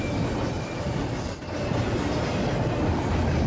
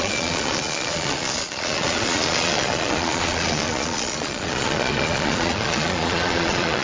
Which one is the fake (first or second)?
second